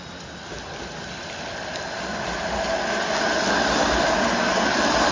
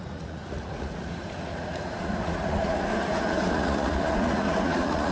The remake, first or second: second